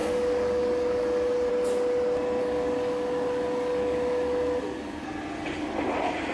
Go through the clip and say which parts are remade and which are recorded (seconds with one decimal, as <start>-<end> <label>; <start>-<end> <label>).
0.0-1.5 remade; 1.5-2.4 recorded; 2.4-5.1 remade; 5.1-6.3 recorded